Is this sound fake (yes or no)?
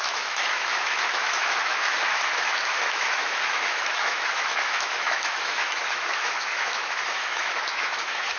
yes